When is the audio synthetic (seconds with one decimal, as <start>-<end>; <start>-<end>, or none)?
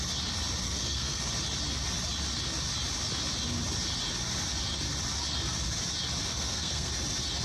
0.6-1.2; 6.3-6.9